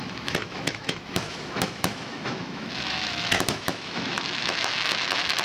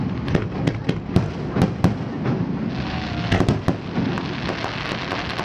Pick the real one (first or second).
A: second